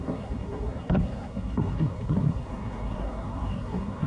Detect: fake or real fake